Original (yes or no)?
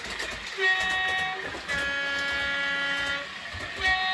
yes